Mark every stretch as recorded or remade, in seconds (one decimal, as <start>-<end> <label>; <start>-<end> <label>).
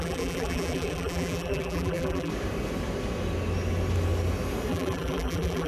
0.0-2.3 remade; 2.3-4.7 recorded; 4.7-5.7 remade